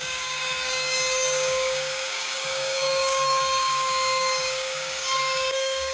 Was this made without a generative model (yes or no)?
no